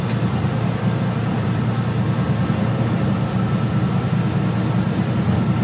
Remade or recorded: remade